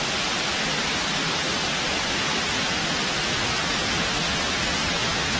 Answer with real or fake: real